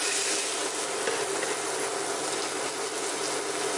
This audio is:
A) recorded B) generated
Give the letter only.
A